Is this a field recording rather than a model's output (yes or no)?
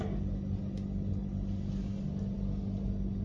yes